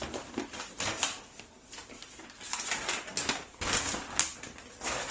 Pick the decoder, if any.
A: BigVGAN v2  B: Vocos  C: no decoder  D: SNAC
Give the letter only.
C